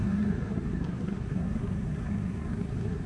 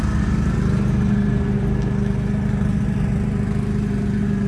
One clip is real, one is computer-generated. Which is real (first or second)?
second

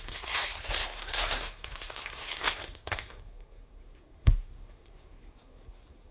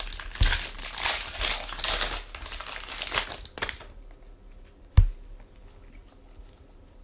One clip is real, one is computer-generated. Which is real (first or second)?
second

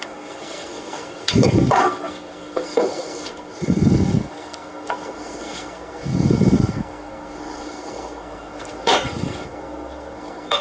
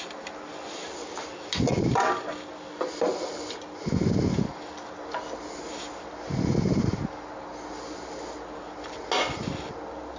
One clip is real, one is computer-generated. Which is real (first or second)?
second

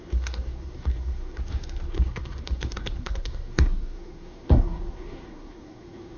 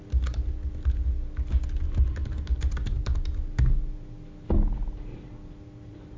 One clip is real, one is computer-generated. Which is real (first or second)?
second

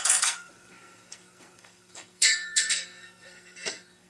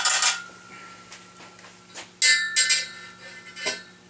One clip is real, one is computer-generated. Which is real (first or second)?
second